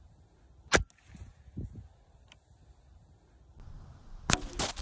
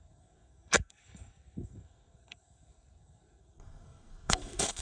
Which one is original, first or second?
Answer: first